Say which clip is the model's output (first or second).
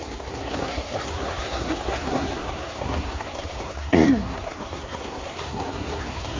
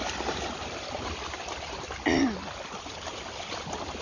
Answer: first